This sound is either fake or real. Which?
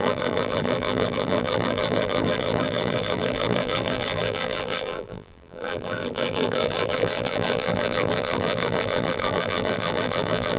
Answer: fake